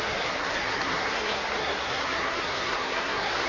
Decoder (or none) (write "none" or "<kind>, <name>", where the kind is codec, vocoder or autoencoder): codec, SNAC